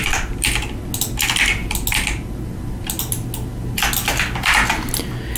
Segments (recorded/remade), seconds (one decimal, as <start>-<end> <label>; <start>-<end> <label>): 0.0-5.4 recorded